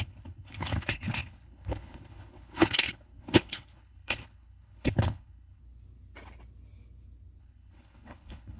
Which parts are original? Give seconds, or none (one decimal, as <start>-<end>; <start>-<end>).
5.6-7.4